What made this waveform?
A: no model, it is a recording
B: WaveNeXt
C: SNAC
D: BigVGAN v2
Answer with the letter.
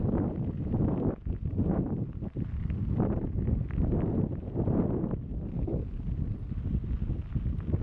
A